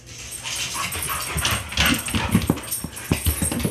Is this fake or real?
real